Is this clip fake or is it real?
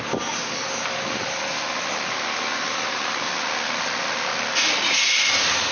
real